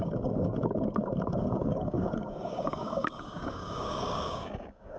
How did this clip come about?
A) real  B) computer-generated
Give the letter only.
B